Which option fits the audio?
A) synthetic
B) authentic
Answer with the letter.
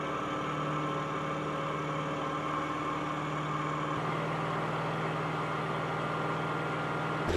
B